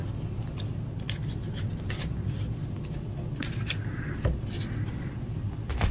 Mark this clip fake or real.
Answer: real